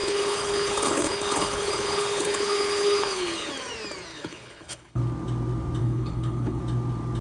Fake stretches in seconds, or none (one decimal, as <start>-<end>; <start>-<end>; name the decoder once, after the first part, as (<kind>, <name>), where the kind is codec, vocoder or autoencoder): 0.0-3.5 (codec, HILCodec); 4.1-5.0; 5.8-6.6